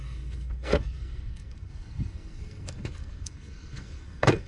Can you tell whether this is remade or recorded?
remade